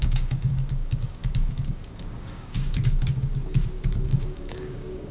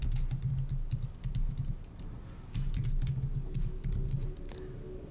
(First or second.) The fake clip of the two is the first